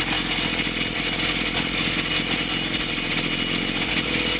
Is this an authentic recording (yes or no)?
yes